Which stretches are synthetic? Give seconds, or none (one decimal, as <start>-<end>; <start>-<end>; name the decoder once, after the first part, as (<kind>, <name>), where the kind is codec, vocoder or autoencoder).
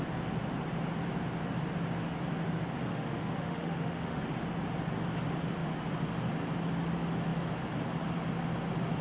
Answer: 2.9-4.2 (autoencoder, DAC-VAE)